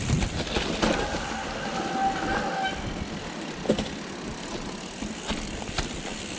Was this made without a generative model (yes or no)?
yes